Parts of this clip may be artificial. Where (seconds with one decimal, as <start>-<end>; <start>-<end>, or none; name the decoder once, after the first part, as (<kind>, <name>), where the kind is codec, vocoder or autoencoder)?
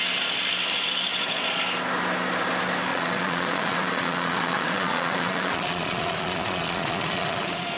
1.1-1.6 (vocoder, Vocos); 2.9-7.8